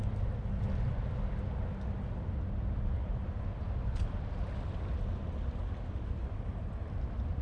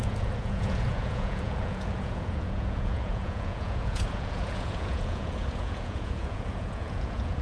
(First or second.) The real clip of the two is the first